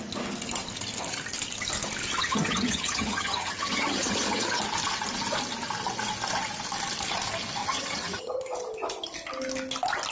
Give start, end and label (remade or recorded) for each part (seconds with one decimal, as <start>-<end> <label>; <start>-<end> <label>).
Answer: 0.0-2.2 recorded; 2.2-4.6 remade; 4.6-7.6 recorded; 7.6-8.4 remade; 8.4-10.1 recorded